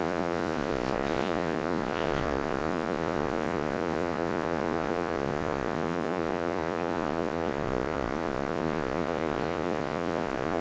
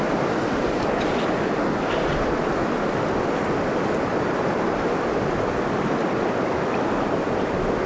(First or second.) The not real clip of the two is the first